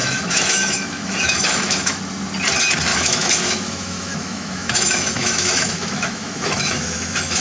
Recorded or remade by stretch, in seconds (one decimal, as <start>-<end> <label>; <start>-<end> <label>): 0.0-2.0 remade; 2.0-2.9 recorded; 2.9-7.4 remade